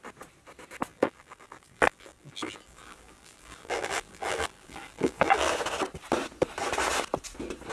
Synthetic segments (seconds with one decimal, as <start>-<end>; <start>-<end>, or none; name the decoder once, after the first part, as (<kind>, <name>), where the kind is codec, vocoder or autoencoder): 0.9-5.5 (vocoder, BigVGAN v2)